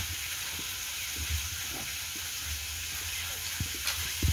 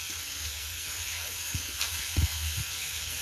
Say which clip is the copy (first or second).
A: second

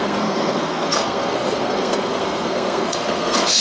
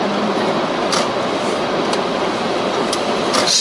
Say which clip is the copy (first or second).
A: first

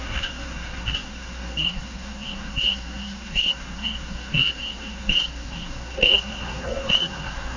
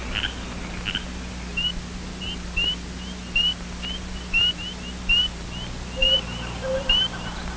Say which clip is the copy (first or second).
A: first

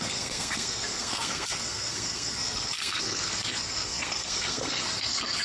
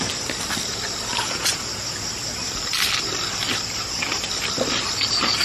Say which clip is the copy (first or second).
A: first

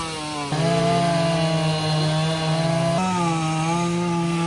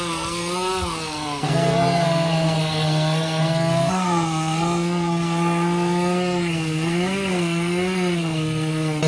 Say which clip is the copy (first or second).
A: second